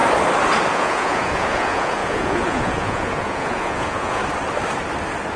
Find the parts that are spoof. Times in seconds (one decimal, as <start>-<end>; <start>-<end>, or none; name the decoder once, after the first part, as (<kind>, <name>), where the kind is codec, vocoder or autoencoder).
0.7-4.2 (vocoder, Vocos)